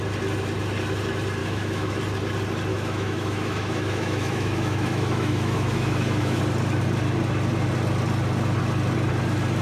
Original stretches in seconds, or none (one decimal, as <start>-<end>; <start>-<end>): 0.0-1.4; 2.0-2.7; 6.4-9.6